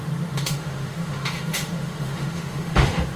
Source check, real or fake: fake